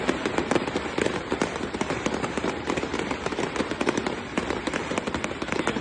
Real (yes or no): no